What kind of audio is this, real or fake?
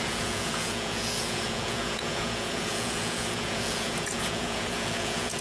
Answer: fake